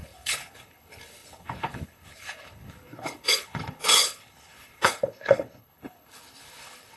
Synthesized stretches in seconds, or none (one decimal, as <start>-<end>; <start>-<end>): 0.0-7.0